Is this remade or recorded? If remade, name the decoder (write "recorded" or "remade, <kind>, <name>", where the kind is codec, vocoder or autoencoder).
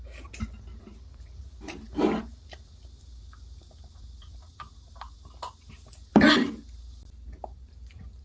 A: recorded